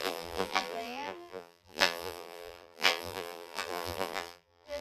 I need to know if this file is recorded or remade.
remade